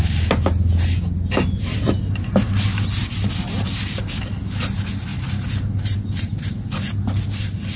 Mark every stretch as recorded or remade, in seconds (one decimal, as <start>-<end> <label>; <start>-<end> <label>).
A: 0.0-7.8 recorded